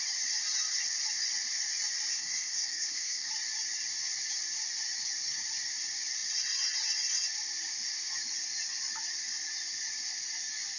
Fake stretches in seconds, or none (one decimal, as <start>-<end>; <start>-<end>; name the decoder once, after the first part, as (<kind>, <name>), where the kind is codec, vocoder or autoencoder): 2.1-3.3 (codec, SNAC)